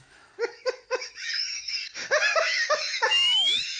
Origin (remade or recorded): remade